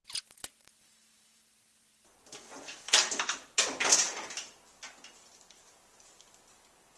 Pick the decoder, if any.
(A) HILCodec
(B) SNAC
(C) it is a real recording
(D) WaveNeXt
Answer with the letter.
C